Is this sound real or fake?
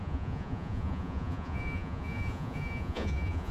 fake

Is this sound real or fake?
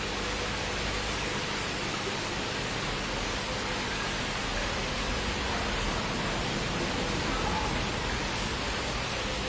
real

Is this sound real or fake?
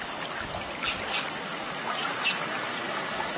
real